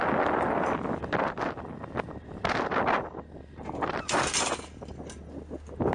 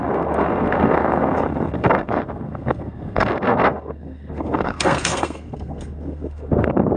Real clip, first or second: first